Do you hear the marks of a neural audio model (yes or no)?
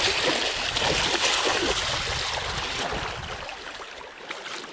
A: no